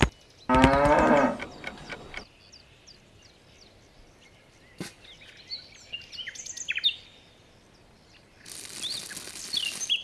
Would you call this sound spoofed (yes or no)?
no